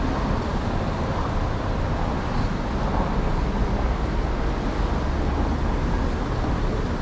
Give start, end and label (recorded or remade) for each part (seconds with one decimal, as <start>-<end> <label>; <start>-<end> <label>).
0.0-7.0 recorded